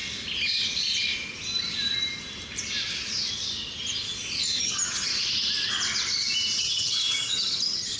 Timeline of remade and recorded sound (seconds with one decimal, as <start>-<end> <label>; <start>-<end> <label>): 0.0-4.6 recorded; 4.6-5.1 remade; 5.1-6.6 recorded; 6.6-8.0 remade